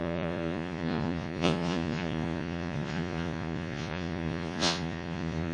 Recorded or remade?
remade